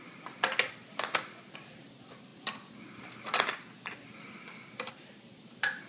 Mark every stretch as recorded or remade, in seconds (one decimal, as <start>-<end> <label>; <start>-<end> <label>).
0.0-5.9 recorded